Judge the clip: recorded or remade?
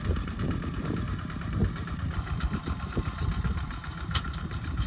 remade